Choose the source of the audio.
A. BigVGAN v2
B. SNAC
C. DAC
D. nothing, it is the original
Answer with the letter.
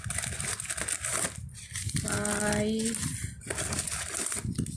D